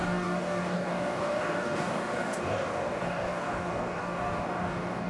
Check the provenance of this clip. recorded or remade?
remade